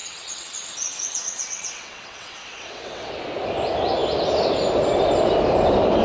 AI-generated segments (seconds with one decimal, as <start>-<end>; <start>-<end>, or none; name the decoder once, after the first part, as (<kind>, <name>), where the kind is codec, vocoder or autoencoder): 0.0-3.1 (vocoder, WaveNeXt)